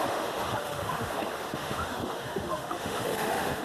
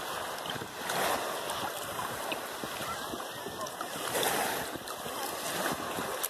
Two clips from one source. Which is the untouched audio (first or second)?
second